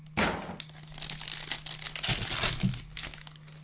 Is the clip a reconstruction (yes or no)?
no